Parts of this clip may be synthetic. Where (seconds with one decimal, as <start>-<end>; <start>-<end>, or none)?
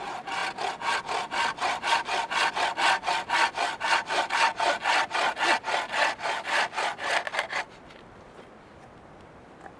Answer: none